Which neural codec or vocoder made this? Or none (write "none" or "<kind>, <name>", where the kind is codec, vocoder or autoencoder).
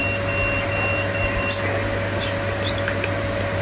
none